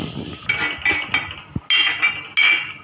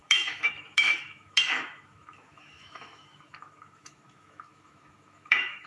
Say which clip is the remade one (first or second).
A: second